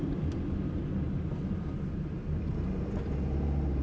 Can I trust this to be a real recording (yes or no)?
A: yes